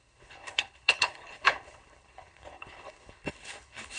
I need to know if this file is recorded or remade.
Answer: remade